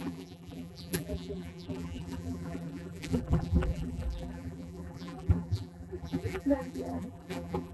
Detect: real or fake fake